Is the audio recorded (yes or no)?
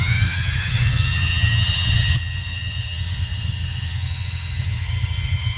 no